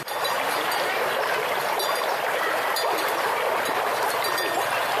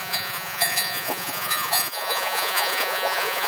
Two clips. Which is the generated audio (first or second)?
second